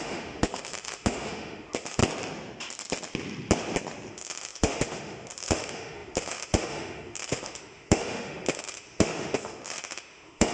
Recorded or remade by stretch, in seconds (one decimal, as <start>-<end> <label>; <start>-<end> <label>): 0.0-2.0 remade; 2.0-4.1 recorded; 4.1-10.5 remade

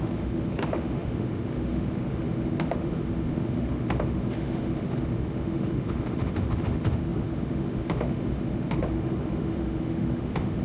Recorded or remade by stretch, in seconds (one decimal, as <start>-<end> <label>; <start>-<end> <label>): 0.0-10.6 remade

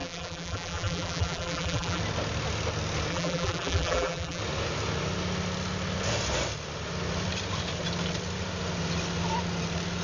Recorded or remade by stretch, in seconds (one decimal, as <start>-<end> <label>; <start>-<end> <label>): 0.0-2.0 remade; 2.0-3.1 recorded; 3.1-4.4 remade; 4.4-10.0 recorded

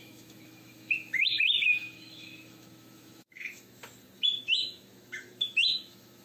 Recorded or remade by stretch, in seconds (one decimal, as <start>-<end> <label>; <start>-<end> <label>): 0.0-3.8 remade; 3.8-4.4 recorded; 4.4-6.2 remade